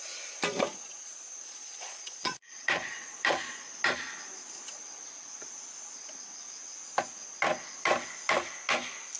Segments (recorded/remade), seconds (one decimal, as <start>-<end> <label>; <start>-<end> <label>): 0.0-0.7 recorded; 0.7-3.7 remade; 3.7-9.2 recorded